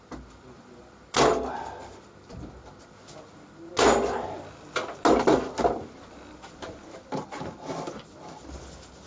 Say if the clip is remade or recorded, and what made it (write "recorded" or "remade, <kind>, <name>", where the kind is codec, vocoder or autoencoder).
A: recorded